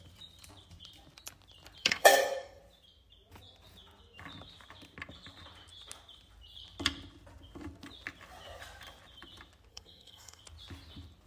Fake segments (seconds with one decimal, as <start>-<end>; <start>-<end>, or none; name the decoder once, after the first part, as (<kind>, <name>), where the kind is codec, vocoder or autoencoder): 1.8-2.6 (codec, SNAC); 9.7-10.4